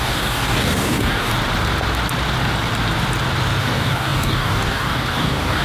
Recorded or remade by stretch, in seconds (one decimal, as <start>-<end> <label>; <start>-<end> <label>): 0.0-1.3 remade; 1.3-3.6 recorded; 3.6-5.6 remade